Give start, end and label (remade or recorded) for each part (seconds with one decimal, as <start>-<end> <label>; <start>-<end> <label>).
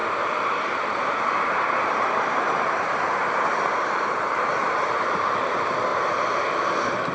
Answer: 0.0-5.9 remade; 5.9-6.6 recorded; 6.6-7.1 remade